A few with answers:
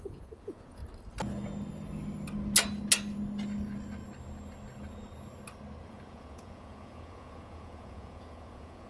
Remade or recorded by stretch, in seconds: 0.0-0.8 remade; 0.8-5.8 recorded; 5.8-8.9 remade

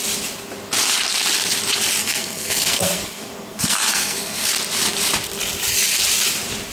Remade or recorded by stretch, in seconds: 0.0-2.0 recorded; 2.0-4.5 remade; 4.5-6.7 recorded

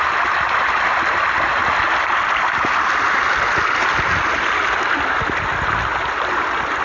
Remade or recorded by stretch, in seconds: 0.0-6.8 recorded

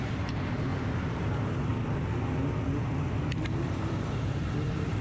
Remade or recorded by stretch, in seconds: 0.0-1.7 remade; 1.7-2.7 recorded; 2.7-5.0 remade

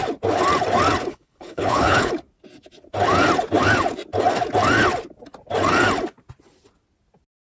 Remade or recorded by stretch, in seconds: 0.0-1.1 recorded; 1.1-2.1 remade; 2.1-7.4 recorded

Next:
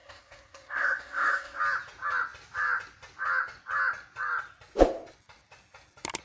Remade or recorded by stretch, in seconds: 0.0-1.6 remade; 1.6-6.2 recorded